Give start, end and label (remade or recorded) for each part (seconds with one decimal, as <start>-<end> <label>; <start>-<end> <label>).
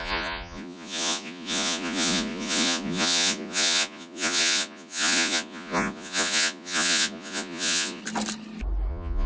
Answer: 0.0-8.0 remade; 8.0-8.9 recorded; 8.9-9.3 remade